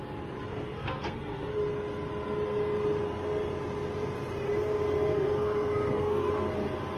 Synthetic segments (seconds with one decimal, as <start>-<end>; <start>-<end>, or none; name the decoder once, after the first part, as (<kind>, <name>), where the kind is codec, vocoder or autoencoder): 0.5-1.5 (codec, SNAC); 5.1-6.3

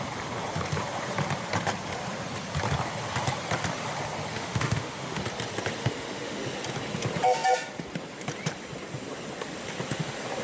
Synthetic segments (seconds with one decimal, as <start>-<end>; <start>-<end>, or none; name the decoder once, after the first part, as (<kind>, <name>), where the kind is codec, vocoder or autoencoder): 4.3-5.2 (autoencoder, DAC-VAE); 5.8-6.4

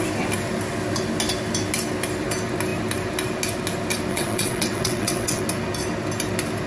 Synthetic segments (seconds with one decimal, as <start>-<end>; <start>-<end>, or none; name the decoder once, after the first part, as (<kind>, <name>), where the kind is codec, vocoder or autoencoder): 4.1-5.4 (vocoder, WaveNeXt)

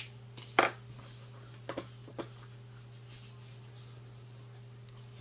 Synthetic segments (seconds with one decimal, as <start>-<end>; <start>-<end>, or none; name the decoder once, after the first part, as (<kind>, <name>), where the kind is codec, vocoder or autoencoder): none

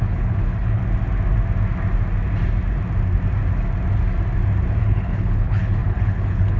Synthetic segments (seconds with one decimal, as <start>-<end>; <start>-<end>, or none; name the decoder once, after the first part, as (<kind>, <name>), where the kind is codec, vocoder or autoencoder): 0.0-0.8 (codec, HILCodec); 4.8-6.6

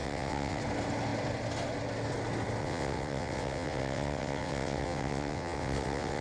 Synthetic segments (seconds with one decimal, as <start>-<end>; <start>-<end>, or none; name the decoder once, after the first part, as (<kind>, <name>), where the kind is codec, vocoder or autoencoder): 0.0-0.6 (vocoder, WaveNeXt); 2.6-6.2